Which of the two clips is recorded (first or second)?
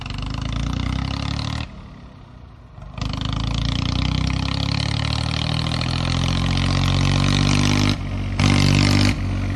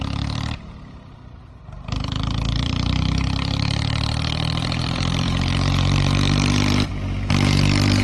first